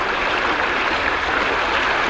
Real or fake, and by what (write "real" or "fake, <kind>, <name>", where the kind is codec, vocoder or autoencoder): real